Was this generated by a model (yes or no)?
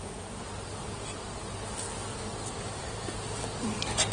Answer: no